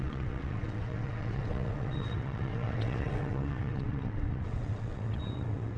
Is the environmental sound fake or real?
fake